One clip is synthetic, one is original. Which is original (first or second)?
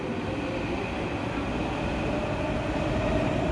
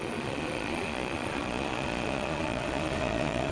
first